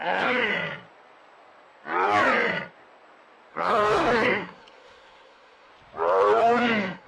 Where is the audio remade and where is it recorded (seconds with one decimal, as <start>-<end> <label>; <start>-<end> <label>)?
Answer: 0.0-0.5 remade; 0.5-3.5 recorded; 3.5-5.7 remade; 5.7-6.4 recorded; 6.4-7.1 remade